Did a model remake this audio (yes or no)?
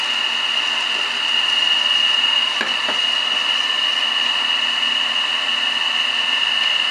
no